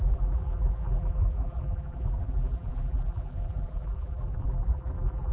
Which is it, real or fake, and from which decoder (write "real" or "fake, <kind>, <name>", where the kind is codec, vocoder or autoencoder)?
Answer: fake, vocoder, BigVGAN v2